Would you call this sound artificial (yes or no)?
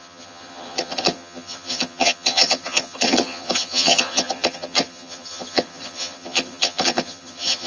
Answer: yes